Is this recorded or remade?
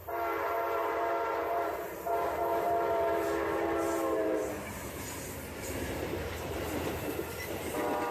remade